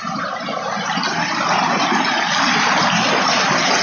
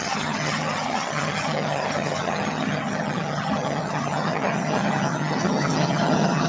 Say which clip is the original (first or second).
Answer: first